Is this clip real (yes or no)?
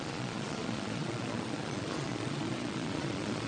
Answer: no